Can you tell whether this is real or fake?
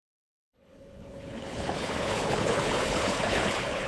fake